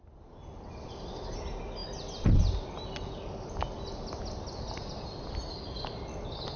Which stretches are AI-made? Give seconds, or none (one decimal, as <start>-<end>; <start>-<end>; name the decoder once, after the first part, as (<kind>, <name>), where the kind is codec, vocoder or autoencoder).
none